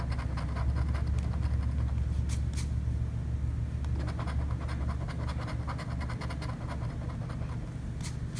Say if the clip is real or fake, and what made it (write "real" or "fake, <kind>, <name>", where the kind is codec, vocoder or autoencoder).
real